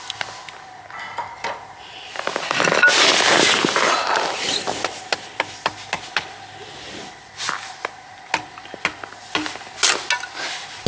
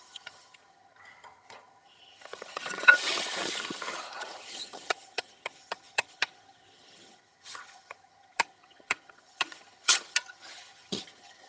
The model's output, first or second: second